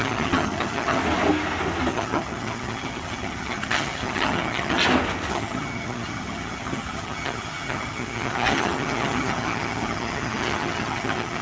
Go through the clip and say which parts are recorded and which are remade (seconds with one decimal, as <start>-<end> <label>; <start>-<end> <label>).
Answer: 0.0-1.0 remade; 1.0-1.9 recorded; 1.9-4.8 remade; 4.8-5.3 recorded; 5.3-11.4 remade